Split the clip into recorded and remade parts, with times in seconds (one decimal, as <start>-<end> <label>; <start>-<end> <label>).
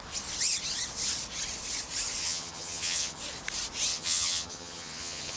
0.0-2.2 recorded; 2.2-3.2 remade; 3.2-3.9 recorded; 3.9-5.4 remade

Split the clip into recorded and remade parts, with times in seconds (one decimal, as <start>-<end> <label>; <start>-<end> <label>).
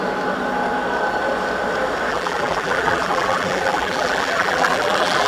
0.0-2.1 recorded; 2.1-5.3 remade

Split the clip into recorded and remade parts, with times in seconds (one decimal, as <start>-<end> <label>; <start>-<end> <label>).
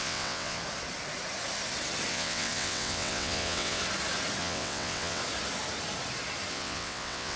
0.0-0.6 remade; 0.6-2.1 recorded; 2.1-3.8 remade; 3.8-4.4 recorded; 4.4-5.2 remade; 5.2-6.5 recorded; 6.5-7.4 remade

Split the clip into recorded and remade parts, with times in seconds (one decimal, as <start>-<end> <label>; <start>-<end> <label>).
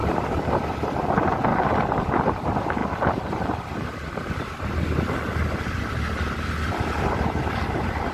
0.0-0.7 recorded; 0.7-2.8 remade; 2.8-5.6 recorded; 5.6-8.1 remade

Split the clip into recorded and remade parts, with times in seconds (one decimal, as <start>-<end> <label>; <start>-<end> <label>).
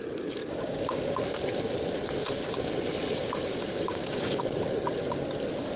0.0-0.4 recorded; 0.4-1.2 remade; 1.2-3.5 recorded; 3.5-4.4 remade; 4.4-5.8 recorded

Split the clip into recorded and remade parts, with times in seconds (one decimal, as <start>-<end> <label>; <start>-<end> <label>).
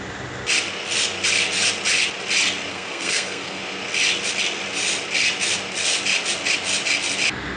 0.0-2.7 recorded; 2.7-3.6 remade; 3.6-7.6 recorded